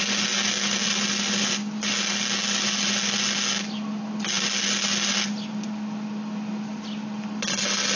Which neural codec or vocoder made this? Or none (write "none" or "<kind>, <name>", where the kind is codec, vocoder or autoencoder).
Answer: none